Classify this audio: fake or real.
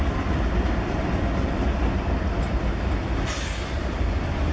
real